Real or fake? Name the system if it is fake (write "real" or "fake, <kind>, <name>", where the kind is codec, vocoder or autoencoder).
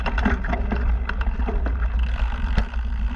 real